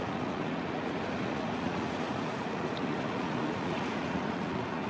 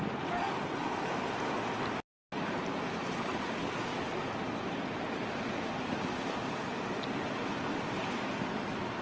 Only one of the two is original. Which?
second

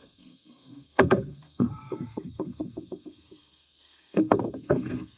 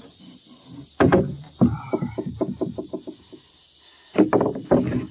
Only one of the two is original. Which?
second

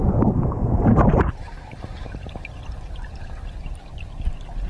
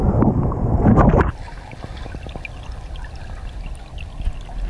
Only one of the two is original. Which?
second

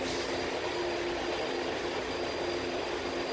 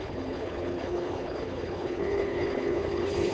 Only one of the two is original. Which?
first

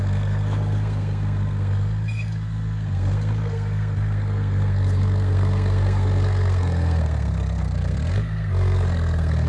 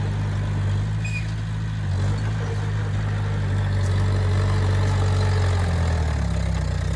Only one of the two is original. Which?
second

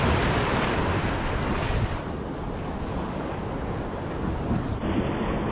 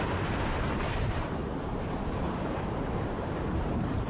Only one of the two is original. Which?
first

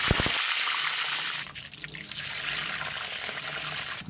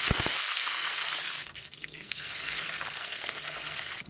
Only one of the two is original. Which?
first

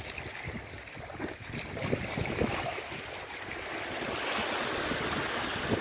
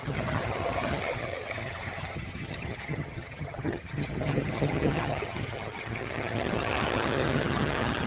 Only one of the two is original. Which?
first